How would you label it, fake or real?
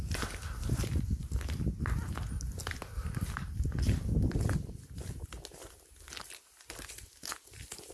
real